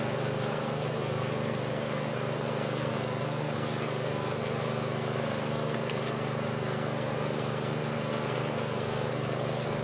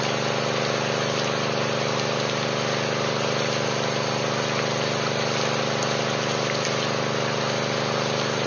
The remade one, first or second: first